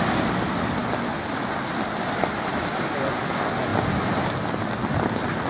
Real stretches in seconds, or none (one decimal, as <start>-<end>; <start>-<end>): 0.0-5.5

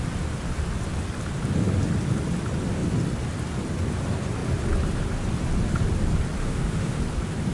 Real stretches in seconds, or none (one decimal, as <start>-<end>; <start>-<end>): 0.0-6.4; 7.0-7.5

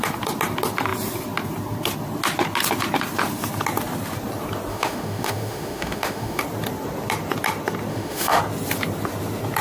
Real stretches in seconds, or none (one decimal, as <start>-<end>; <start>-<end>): 0.0-4.7; 6.4-7.9; 8.4-9.6

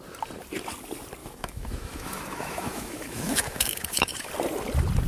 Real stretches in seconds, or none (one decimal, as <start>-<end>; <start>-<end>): 0.0-1.2; 4.3-5.1